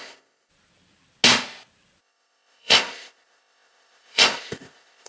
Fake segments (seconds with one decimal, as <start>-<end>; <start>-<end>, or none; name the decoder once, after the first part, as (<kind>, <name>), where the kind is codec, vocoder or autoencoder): 0.0-0.5 (codec, ZipCodec); 2.0-5.1